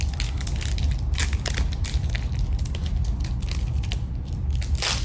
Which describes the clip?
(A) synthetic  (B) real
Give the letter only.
B